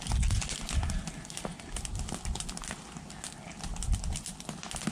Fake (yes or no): no